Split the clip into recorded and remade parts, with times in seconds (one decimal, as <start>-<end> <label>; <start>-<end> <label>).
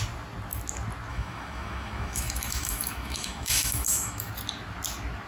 0.0-1.1 recorded; 1.1-4.3 remade; 4.3-5.3 recorded